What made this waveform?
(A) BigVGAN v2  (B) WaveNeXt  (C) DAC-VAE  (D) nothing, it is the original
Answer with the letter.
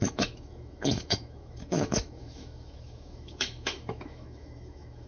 C